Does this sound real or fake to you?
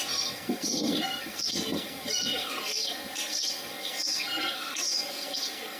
fake